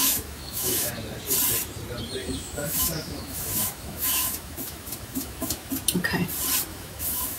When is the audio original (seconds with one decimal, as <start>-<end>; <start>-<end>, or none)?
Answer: 0.9-2.2; 5.7-6.7